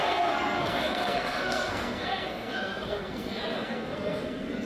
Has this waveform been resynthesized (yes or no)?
yes